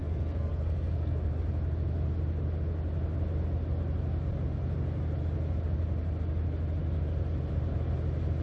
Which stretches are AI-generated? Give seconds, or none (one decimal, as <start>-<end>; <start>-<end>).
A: 0.0-1.3